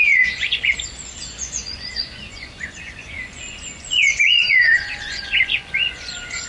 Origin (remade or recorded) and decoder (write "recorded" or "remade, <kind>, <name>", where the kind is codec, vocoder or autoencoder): remade, vocoder, Vocos